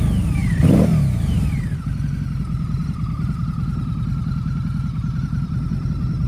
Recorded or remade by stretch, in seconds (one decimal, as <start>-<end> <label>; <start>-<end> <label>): 0.0-2.8 recorded; 2.8-3.4 remade; 3.4-6.3 recorded